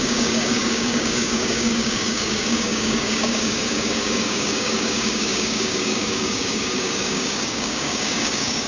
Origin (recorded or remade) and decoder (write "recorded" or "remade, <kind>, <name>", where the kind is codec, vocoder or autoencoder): remade, codec, DAC